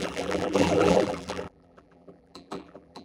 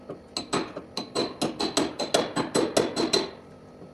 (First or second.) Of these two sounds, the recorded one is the second